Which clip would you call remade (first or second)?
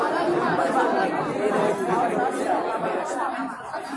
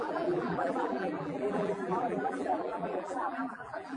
second